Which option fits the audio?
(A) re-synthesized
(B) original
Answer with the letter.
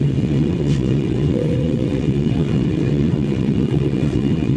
A